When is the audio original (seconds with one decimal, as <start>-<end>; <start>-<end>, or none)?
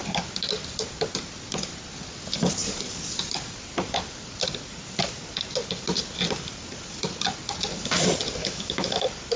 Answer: 0.0-8.4; 9.0-9.4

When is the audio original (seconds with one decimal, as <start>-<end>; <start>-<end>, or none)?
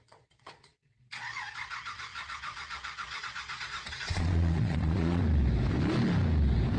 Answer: 5.2-6.8